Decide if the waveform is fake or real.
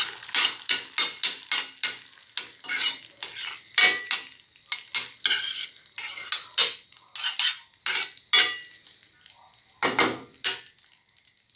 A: real